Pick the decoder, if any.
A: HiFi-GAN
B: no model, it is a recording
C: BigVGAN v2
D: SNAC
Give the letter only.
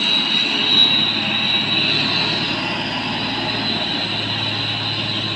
B